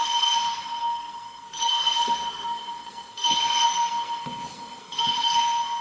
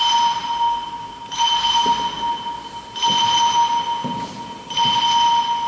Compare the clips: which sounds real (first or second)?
second